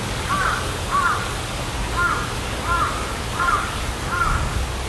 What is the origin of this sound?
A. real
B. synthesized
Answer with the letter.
B